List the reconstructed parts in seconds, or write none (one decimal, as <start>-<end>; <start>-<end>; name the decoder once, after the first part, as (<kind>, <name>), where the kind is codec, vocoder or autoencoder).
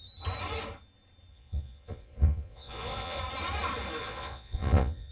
1.3-3.2 (vocoder, Vocos); 4.0-5.1